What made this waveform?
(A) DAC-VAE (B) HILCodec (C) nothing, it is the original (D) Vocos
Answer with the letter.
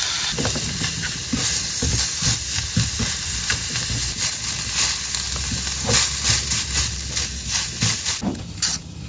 C